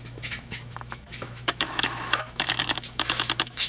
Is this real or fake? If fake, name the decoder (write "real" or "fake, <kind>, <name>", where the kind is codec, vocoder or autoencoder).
fake, autoencoder, DAC-VAE